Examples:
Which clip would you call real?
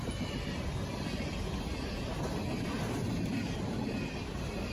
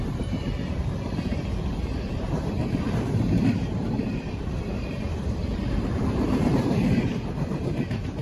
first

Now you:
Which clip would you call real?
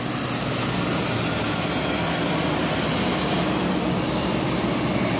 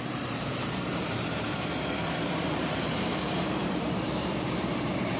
first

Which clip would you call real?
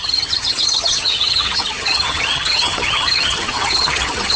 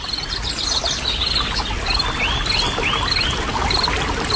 second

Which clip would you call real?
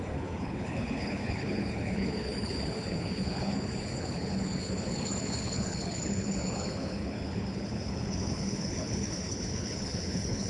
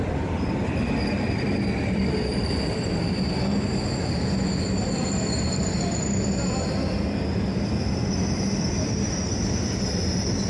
second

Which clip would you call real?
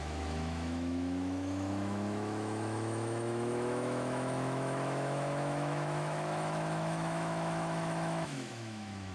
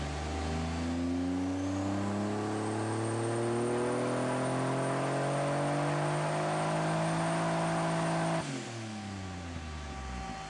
second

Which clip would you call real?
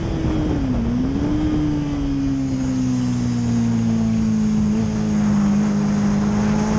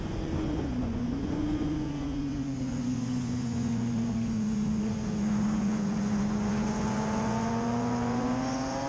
first